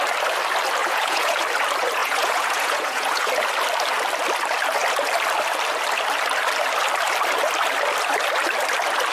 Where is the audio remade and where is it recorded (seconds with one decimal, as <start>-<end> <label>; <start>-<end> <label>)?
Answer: 0.0-0.8 recorded; 0.8-1.4 remade; 1.4-2.0 recorded; 2.0-3.3 remade; 3.3-9.1 recorded